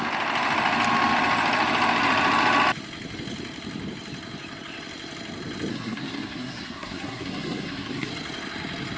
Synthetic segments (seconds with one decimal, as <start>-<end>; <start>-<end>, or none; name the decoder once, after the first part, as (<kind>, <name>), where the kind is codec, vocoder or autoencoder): 5.7-8.1 (codec, SNAC)